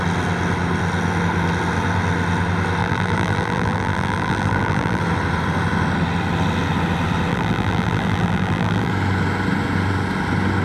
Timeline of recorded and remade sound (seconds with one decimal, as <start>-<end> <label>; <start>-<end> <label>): 0.0-2.8 recorded; 2.8-5.0 remade; 5.0-7.3 recorded; 7.3-8.9 remade; 8.9-10.6 recorded